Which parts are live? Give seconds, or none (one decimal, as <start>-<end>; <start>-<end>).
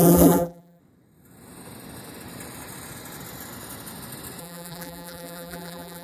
0.8-4.4